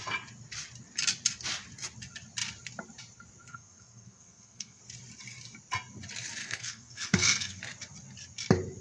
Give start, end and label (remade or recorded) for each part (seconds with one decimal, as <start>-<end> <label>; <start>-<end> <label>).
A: 0.0-3.5 recorded; 3.5-4.8 remade; 4.8-6.4 recorded; 6.4-7.6 remade; 7.6-8.8 recorded